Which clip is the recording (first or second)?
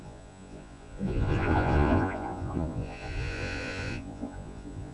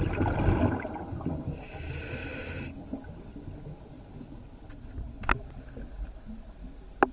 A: second